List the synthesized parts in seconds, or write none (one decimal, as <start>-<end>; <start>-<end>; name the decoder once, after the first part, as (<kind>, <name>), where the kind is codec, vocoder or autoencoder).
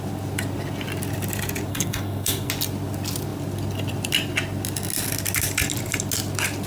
1.7-2.5 (codec, SNAC)